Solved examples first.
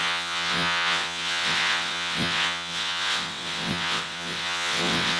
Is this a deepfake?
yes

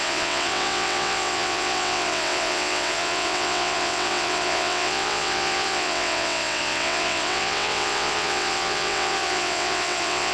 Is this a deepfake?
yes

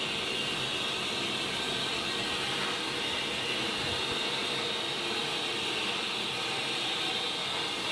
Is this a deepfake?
no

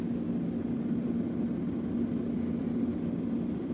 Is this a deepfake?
no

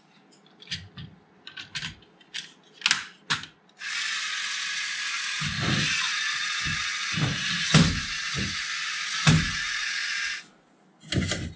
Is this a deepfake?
no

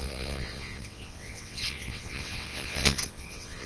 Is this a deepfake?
yes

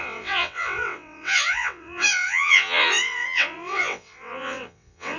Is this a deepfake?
yes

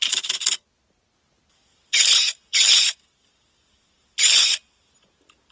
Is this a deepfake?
no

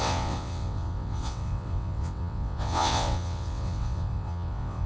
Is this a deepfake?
yes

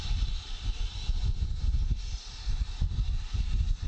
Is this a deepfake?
no